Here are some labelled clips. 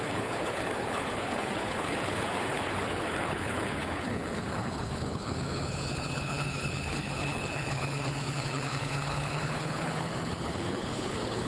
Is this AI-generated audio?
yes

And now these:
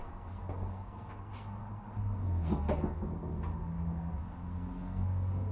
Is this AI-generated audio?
yes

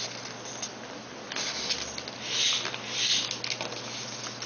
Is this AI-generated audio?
no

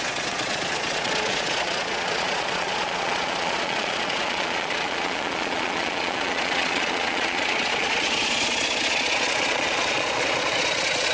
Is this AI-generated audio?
yes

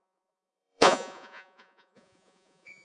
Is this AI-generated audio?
yes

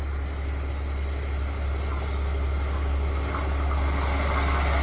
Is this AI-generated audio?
no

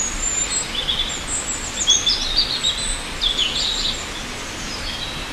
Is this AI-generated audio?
no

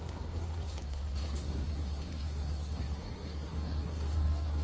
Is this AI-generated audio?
yes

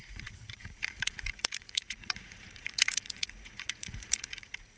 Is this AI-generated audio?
yes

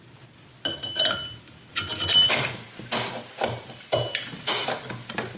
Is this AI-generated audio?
no